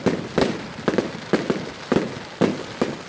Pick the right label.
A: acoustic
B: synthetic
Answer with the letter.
A